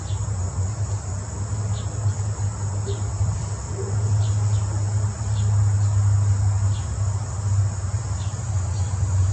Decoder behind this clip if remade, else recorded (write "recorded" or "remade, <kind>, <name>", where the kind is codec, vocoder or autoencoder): recorded